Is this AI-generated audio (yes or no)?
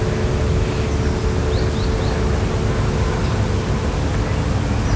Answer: no